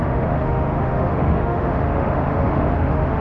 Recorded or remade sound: remade